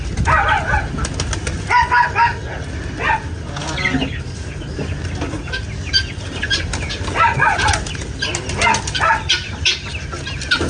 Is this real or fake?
real